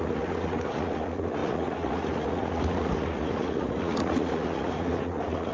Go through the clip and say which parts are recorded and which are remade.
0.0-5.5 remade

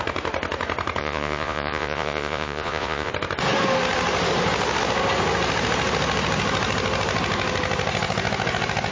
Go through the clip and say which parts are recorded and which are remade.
0.0-1.0 recorded; 1.0-3.1 remade; 3.1-8.9 recorded

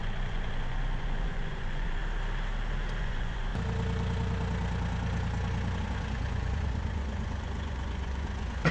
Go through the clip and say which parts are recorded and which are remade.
0.0-2.0 remade; 2.0-3.0 recorded; 3.0-3.5 remade; 3.5-5.8 recorded; 5.8-8.7 remade

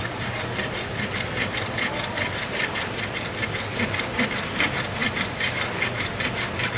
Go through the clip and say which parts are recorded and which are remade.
0.0-6.8 recorded